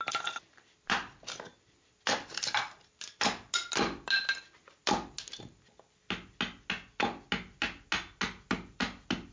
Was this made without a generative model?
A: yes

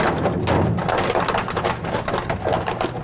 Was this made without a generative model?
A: yes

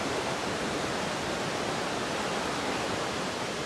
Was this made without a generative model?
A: yes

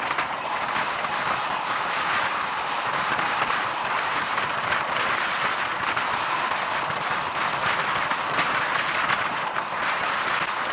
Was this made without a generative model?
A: yes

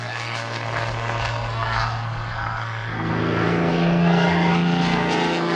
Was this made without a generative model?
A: no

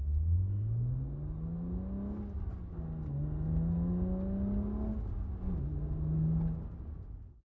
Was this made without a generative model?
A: yes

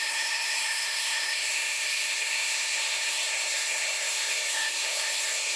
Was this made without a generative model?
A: no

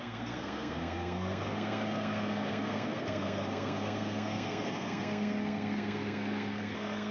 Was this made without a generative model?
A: no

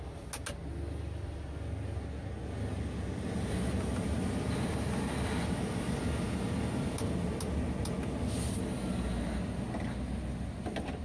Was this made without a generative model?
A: yes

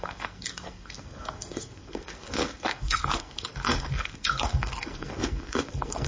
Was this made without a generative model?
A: no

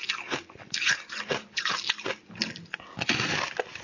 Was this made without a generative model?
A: yes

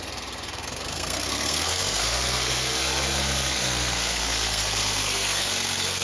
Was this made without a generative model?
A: no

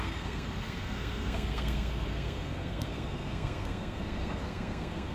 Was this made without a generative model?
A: no